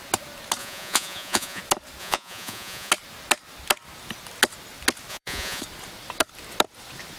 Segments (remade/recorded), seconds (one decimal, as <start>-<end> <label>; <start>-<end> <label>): 0.0-0.6 recorded; 0.6-1.6 remade; 1.6-2.0 recorded; 2.0-2.9 remade; 2.9-5.1 recorded; 5.1-5.6 remade; 5.6-7.2 recorded